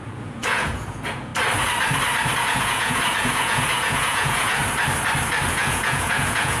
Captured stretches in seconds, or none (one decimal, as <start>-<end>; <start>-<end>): 1.3-2.4; 4.6-5.5